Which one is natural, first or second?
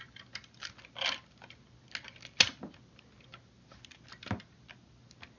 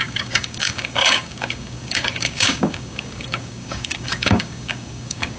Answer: first